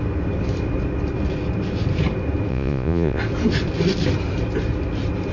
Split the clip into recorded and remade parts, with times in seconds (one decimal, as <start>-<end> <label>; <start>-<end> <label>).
0.0-2.5 recorded; 2.5-3.2 remade; 3.2-5.3 recorded